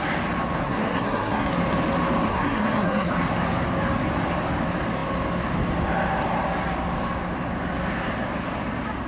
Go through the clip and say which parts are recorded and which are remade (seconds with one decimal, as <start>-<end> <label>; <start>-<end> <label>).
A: 0.0-0.6 recorded; 0.6-1.5 remade; 1.5-2.3 recorded; 2.3-3.1 remade; 3.1-9.1 recorded

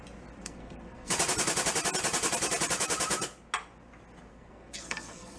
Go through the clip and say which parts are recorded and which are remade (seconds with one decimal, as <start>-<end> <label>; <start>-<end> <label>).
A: 0.0-0.4 recorded; 0.4-1.1 remade; 1.1-4.3 recorded; 4.3-5.4 remade

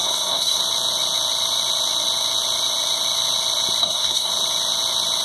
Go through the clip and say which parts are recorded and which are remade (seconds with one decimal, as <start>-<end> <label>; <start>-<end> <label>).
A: 0.0-0.6 remade; 0.6-3.8 recorded; 3.8-4.3 remade; 4.3-5.2 recorded

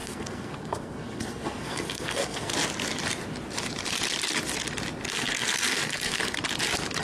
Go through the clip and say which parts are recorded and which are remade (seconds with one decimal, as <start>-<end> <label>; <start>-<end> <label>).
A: 0.0-2.5 remade; 2.5-5.1 recorded; 5.1-6.2 remade; 6.2-7.0 recorded

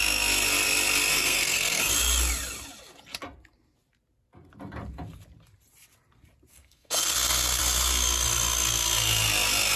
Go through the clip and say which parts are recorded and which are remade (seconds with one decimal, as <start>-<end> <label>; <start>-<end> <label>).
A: 0.0-1.1 recorded; 1.1-1.9 remade; 1.9-6.5 recorded; 6.5-7.6 remade; 7.6-9.8 recorded

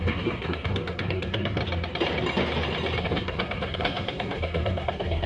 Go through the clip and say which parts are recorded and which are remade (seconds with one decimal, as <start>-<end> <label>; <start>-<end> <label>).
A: 0.0-1.6 remade; 1.6-3.0 recorded; 3.0-5.3 remade

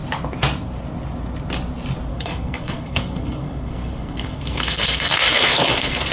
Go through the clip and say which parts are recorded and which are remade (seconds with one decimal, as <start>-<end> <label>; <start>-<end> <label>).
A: 0.0-2.1 recorded; 2.1-6.1 remade

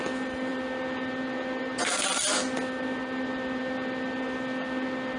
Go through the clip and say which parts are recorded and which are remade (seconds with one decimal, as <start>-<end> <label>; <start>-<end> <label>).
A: 0.0-5.2 recorded